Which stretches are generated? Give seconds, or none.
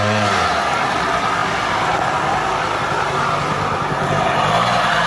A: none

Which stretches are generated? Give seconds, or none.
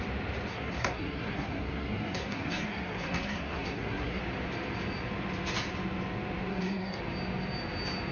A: 0.5-4.2 (codec, SNAC); 6.5-7.0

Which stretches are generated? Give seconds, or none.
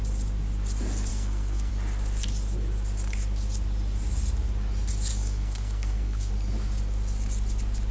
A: 1.1-1.7 (codec, SNAC); 5.1-6.3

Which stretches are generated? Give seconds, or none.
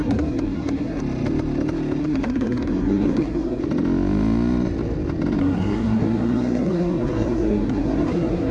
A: 0.0-1.0 (codec, SNAC); 2.0-3.6; 5.4-8.5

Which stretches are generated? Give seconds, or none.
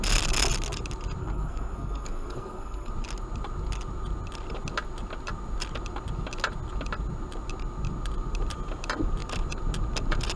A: 1.2-2.9 (codec, SNAC)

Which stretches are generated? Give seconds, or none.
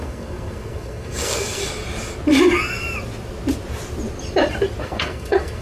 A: 0.0-1.6 (codec, SNAC); 4.8-5.6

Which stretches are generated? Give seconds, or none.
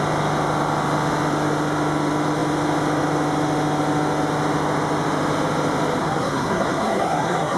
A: 6.0-7.6 (codec, SNAC)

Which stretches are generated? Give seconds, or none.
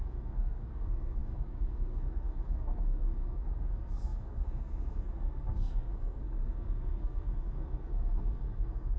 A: 0.0-9.0 (codec, SNAC)